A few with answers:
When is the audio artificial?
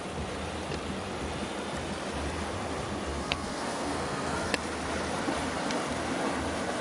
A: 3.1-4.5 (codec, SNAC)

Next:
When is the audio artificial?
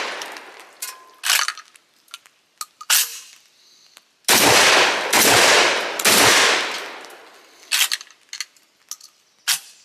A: none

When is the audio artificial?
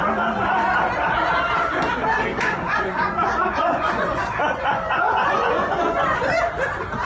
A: 2.3-6.3 (vocoder, Vocos)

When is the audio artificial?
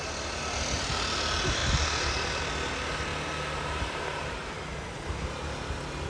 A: 1.6-2.4 (vocoder, BigVGAN v2); 3.1-4.3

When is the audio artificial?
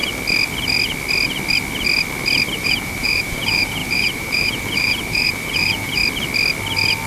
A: 2.6-6.0 (vocoder, BigVGAN v2)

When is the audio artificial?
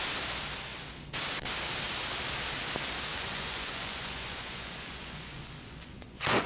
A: 3.1-6.5 (vocoder, Vocos)